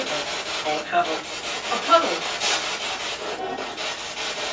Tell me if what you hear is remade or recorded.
recorded